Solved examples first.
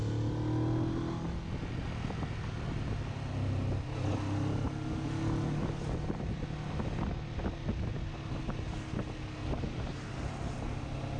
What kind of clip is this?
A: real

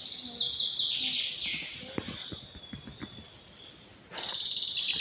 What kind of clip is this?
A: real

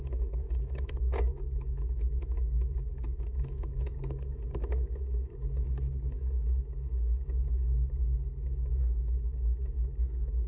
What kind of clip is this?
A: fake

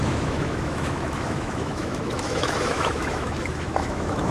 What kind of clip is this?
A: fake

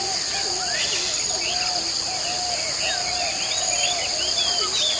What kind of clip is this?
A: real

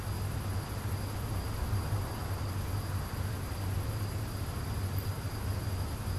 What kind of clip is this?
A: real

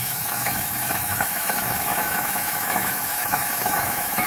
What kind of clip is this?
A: fake